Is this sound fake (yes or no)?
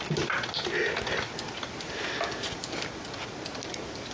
no